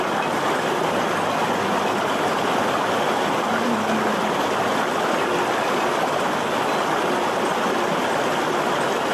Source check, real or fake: real